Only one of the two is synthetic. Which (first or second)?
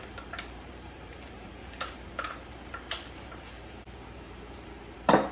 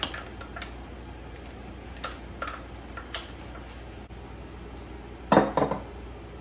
first